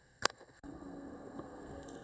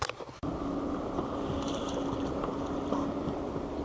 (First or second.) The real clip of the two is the second